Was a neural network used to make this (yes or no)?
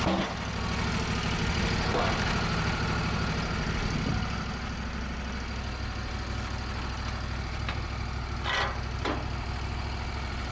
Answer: no